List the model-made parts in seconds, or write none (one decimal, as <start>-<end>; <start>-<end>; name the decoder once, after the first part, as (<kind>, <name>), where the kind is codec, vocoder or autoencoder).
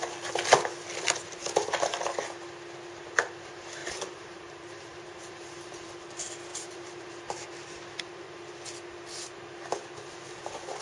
3.8-5.9 (vocoder, BigVGAN v2); 6.5-7.1